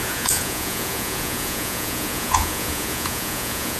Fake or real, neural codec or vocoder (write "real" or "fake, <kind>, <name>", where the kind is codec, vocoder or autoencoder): fake, vocoder, Vocos